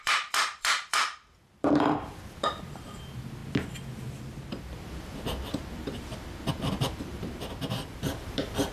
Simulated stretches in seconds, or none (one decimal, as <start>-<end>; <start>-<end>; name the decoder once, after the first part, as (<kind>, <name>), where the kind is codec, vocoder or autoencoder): 0.0-3.4 (vocoder, BigVGAN v2); 4.5-8.7